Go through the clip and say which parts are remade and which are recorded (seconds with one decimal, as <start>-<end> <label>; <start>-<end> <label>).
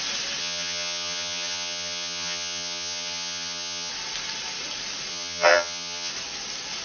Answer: 0.0-0.4 recorded; 0.4-3.9 remade; 3.9-5.1 recorded; 5.1-6.1 remade; 6.1-6.8 recorded